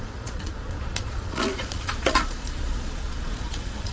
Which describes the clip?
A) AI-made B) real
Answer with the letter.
A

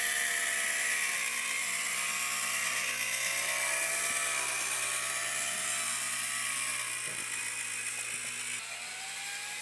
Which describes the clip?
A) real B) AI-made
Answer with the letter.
A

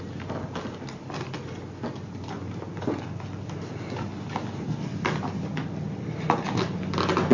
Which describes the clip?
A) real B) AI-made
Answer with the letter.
A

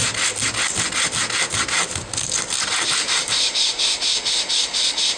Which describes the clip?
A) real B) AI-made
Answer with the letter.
A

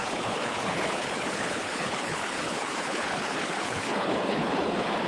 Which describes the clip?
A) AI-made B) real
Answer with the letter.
A